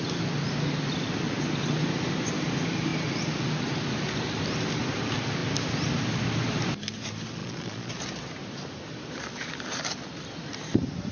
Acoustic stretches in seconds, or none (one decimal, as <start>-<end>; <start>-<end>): 0.0-7.4; 7.9-11.1